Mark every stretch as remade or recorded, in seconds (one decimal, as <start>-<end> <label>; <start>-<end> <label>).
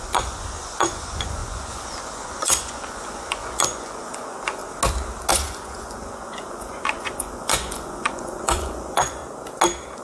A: 0.0-4.6 remade; 4.6-5.3 recorded; 5.3-9.2 remade; 9.2-10.0 recorded